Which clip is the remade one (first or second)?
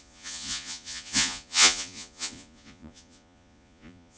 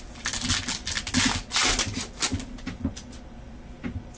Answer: first